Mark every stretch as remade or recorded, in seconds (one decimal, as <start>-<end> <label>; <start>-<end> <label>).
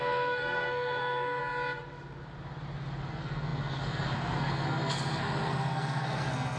0.0-1.4 remade; 1.4-3.1 recorded; 3.1-6.6 remade